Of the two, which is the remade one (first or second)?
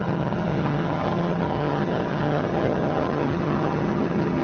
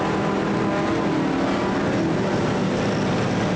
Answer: first